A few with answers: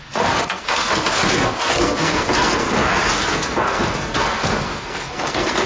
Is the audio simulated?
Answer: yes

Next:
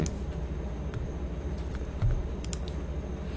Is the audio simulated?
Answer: no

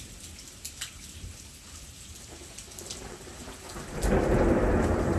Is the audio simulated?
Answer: no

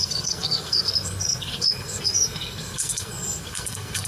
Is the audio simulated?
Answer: yes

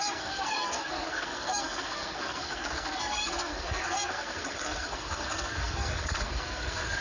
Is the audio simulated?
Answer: yes